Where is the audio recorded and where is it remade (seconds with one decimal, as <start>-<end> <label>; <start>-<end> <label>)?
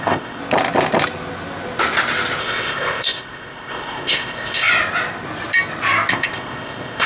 0.0-0.4 remade; 0.4-2.4 recorded; 2.4-4.7 remade; 4.7-6.1 recorded; 6.1-7.1 remade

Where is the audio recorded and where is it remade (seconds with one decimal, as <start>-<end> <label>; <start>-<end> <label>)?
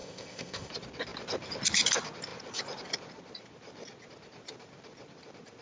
0.0-0.7 remade; 0.7-5.6 recorded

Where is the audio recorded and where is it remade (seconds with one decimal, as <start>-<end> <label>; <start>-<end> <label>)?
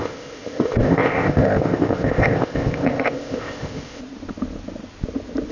0.0-4.0 remade; 4.0-5.5 recorded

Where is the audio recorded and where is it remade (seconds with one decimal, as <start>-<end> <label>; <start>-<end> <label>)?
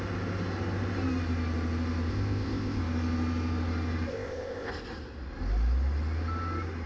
0.0-2.1 recorded; 2.1-2.8 remade; 2.8-4.1 recorded; 4.1-4.7 remade; 4.7-6.9 recorded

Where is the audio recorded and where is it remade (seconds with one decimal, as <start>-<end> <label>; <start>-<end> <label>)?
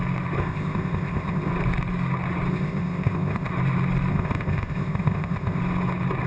0.0-0.4 recorded; 0.4-1.5 remade; 1.5-2.5 recorded; 2.5-3.5 remade; 3.5-4.1 recorded; 4.1-5.6 remade; 5.6-6.3 recorded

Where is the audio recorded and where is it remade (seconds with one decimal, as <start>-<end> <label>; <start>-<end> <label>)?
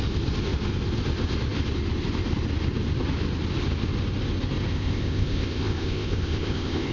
0.0-4.7 recorded; 4.7-6.9 remade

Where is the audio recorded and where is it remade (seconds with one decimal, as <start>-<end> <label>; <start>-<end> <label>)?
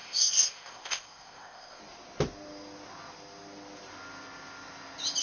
0.0-1.8 remade; 1.8-5.2 recorded